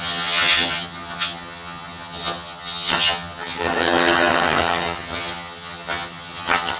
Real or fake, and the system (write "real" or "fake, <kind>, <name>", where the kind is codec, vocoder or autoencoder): fake, vocoder, HiFi-GAN